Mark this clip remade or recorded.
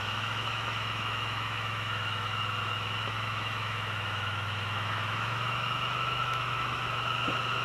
remade